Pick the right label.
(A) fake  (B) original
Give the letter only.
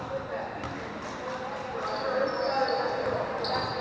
B